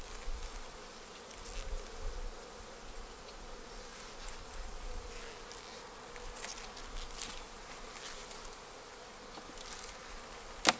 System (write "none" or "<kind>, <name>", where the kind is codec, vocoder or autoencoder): none